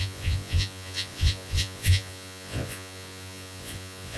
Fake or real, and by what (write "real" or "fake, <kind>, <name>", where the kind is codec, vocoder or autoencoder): fake, vocoder, Vocos